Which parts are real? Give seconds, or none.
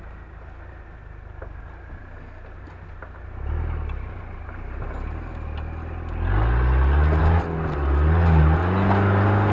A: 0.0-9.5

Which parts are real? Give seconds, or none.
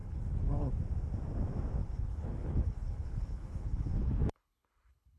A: 0.7-1.8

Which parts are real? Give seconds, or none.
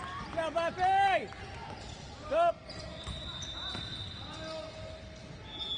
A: 0.0-5.8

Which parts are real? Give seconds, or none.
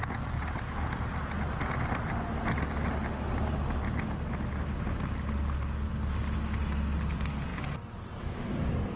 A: 0.0-9.0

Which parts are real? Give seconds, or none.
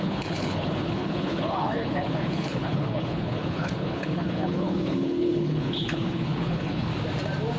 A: 6.9-7.6